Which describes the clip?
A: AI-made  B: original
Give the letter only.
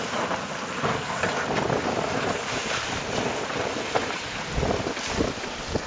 B